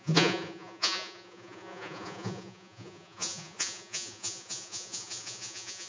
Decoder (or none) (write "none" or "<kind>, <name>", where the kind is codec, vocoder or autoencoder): vocoder, Vocos